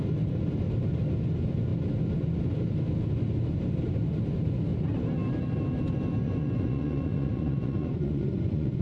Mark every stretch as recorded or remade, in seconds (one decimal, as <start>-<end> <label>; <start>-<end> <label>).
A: 0.0-6.2 recorded; 6.2-8.8 remade